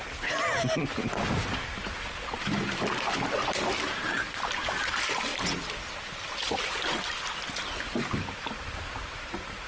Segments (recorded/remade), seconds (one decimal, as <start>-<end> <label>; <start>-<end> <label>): 0.0-9.7 recorded